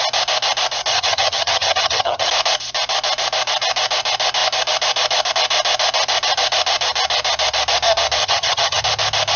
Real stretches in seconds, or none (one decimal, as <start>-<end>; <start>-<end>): 0.0-0.9; 2.3-8.2; 8.8-9.4

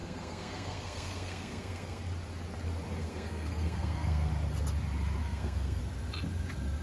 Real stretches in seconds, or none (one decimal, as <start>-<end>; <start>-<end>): 2.0-3.0; 4.3-5.2; 5.8-6.8

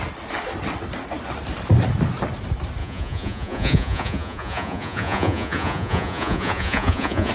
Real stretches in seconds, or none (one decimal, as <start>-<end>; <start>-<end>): 0.0-2.8

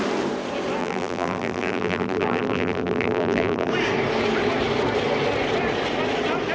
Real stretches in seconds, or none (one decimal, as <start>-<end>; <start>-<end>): 0.0-0.8; 3.7-6.5

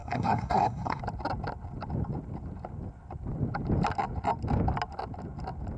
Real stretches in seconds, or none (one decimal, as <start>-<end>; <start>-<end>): 1.0-5.8